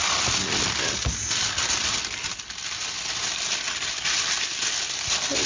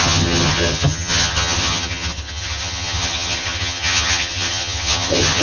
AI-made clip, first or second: second